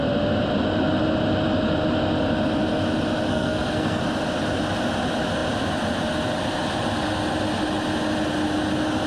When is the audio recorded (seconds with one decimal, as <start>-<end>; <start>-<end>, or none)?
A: 0.0-3.3; 4.0-9.1